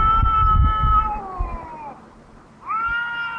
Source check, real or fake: real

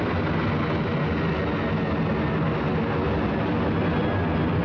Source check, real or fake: real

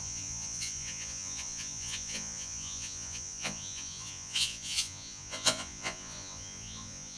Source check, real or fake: fake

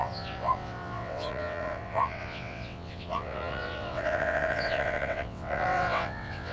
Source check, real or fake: fake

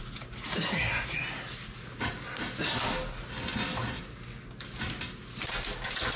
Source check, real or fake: real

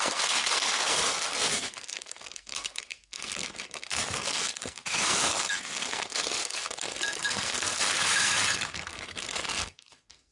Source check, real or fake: fake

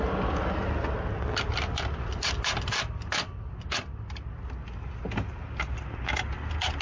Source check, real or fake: real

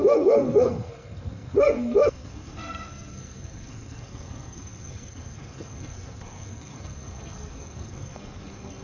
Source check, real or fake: fake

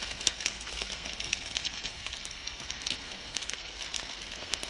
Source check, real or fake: fake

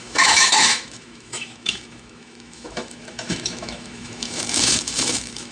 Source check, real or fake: fake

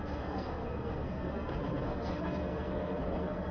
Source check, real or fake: fake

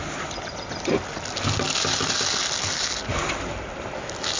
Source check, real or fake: real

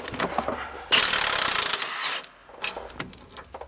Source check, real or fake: real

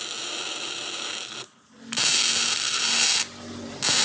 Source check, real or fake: real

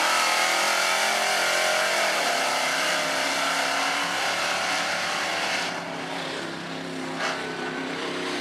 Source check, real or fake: fake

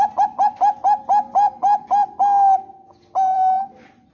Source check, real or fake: real